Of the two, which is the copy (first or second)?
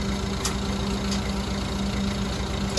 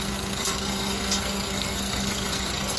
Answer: second